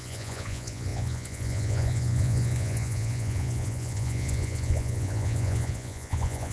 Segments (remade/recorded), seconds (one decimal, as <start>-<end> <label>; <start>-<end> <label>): 0.0-6.5 remade